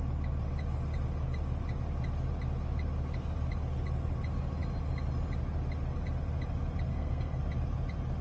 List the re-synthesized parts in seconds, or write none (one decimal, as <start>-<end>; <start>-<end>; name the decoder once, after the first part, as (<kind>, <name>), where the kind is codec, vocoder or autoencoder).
6.9-7.4 (codec, SNAC)